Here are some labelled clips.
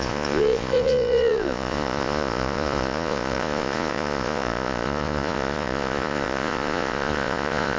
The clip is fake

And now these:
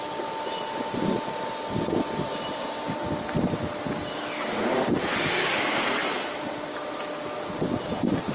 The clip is real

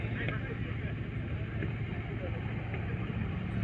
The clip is real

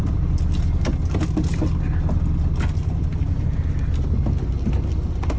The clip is real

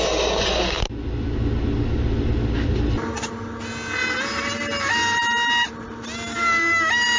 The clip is real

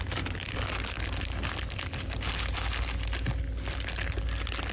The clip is real